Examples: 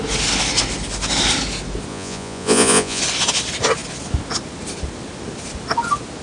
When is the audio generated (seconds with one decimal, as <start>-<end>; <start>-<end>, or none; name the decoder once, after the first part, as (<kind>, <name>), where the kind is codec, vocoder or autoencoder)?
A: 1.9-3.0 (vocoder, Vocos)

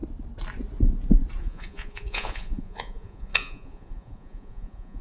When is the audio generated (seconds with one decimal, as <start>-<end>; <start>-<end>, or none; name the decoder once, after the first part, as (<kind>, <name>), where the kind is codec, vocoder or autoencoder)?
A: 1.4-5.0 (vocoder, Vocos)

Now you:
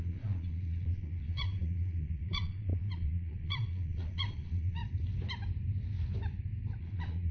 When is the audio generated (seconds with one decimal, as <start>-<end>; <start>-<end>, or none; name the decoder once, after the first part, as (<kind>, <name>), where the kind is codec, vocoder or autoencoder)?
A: 0.0-4.8 (vocoder, Vocos); 6.8-7.3